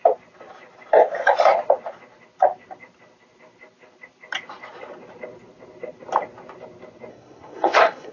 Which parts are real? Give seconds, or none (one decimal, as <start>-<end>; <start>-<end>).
0.0-7.1